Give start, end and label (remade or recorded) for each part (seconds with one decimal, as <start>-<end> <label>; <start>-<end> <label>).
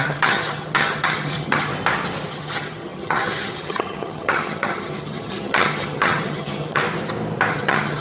0.0-1.7 remade; 1.7-2.3 recorded; 2.3-6.8 remade; 6.8-7.5 recorded; 7.5-8.0 remade